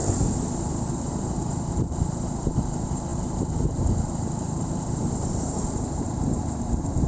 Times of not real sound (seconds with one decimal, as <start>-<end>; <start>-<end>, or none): 0.0-7.1